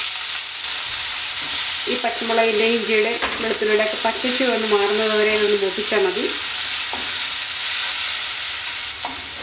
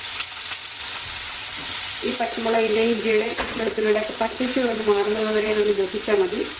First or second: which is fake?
second